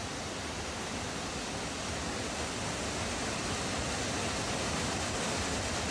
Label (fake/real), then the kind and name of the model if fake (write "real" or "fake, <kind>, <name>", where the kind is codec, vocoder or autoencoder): real